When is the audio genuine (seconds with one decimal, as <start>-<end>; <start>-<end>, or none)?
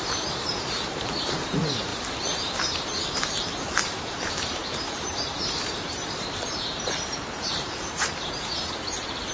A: 1.9-3.6